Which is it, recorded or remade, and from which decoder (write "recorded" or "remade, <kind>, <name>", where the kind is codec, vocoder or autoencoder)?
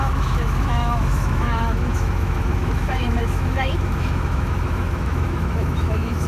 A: remade, autoencoder, DAC-VAE